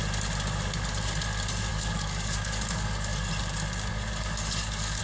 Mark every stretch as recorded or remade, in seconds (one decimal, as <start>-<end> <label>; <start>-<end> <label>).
0.0-1.7 recorded; 1.7-3.3 remade; 3.3-3.9 recorded; 3.9-5.0 remade